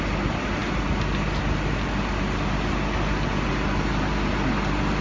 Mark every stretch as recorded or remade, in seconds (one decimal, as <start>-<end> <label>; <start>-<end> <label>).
0.0-5.0 recorded